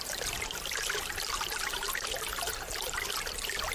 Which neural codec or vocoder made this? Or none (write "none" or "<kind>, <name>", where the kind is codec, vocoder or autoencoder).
vocoder, BigVGAN v2